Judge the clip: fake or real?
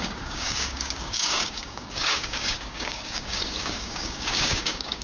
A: fake